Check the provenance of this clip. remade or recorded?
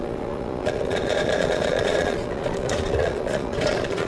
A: remade